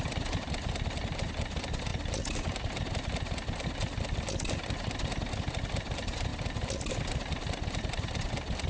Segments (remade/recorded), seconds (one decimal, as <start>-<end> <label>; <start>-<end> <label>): 0.0-8.7 recorded